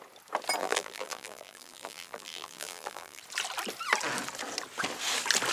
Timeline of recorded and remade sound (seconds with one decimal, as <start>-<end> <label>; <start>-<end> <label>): 0.0-0.6 recorded; 0.6-3.2 remade; 3.2-5.5 recorded

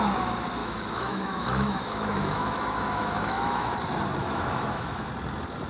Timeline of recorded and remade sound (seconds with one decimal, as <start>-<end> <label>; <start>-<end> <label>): 0.0-0.6 recorded; 0.6-3.7 remade; 3.7-4.2 recorded; 4.2-5.1 remade; 5.1-5.7 recorded

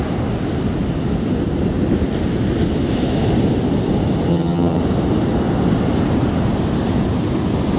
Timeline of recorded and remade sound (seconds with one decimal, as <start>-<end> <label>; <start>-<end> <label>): 0.0-4.3 recorded; 4.3-4.8 remade; 4.8-7.8 recorded

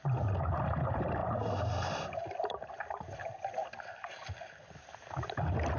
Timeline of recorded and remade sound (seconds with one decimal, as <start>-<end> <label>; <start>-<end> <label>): 0.0-5.8 recorded